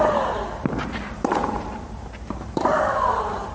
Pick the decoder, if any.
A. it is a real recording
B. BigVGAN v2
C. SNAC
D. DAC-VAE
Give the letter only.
B